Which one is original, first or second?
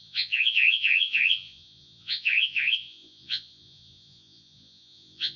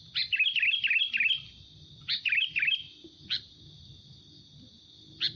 second